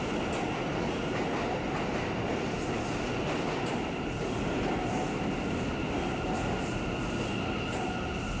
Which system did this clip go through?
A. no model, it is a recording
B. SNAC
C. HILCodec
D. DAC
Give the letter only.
A